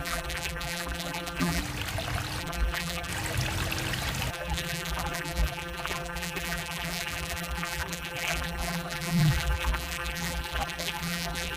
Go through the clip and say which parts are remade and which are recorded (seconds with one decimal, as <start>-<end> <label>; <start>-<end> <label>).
0.0-1.6 remade; 1.6-2.4 recorded; 2.4-3.1 remade; 3.1-4.3 recorded; 4.3-11.6 remade